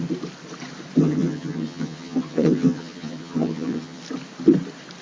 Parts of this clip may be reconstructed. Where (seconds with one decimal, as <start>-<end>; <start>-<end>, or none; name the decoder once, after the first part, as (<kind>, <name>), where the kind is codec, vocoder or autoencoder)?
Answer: 1.0-4.0 (vocoder, HiFi-GAN)

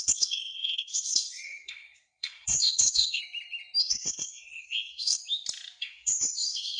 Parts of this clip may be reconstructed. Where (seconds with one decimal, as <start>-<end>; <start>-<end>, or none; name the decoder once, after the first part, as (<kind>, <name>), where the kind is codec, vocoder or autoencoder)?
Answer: 0.0-3.2 (codec, SNAC); 3.8-5.2; 5.8-6.8

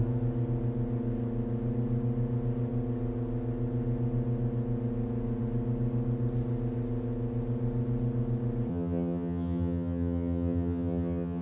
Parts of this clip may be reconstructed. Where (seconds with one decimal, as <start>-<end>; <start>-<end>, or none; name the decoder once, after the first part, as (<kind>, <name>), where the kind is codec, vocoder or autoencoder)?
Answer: 8.7-11.4 (vocoder, HiFi-GAN)